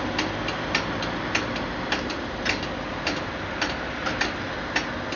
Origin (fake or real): real